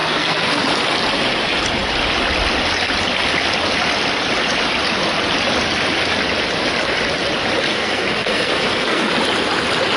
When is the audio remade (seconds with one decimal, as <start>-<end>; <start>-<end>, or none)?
0.0-0.6; 7.7-9.1